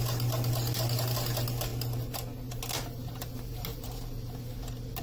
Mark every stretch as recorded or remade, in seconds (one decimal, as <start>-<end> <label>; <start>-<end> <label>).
0.0-5.0 recorded